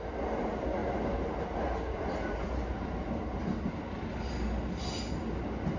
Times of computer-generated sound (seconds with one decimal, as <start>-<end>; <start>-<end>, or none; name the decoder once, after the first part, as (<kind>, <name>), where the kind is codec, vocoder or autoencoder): none